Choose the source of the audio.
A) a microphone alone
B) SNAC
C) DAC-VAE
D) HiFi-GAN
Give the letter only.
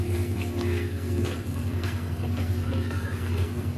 B